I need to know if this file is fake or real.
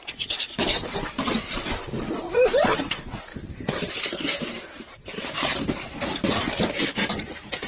fake